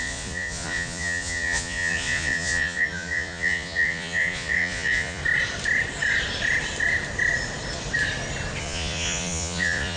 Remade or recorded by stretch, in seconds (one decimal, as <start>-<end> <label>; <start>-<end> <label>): 0.0-5.2 remade; 5.2-8.6 recorded; 8.6-10.0 remade

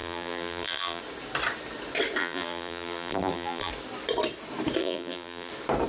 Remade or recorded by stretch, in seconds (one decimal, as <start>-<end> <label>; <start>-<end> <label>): 0.0-1.0 remade; 1.0-2.2 recorded; 2.2-3.7 remade; 3.7-4.8 recorded; 4.8-5.5 remade; 5.5-5.9 recorded

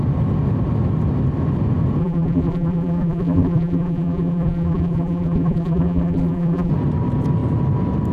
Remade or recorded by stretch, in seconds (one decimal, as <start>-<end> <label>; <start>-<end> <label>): 0.0-2.0 recorded; 2.0-6.7 remade; 6.7-8.1 recorded

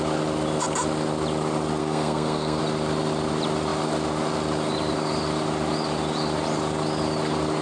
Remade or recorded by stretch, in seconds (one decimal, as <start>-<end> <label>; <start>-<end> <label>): 0.0-1.8 recorded; 1.8-2.6 remade; 2.6-7.6 recorded

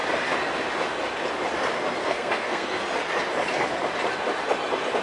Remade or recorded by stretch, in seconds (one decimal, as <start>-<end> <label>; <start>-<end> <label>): 0.0-2.0 recorded; 2.0-2.8 remade; 2.8-5.0 recorded

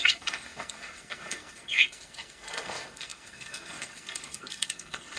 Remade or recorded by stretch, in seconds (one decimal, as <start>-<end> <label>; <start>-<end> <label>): 0.0-5.2 remade